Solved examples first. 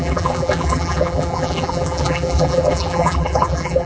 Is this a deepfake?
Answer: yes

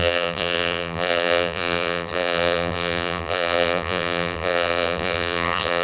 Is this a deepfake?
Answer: yes